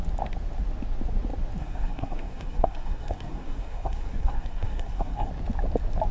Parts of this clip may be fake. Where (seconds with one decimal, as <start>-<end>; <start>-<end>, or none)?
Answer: 1.6-5.3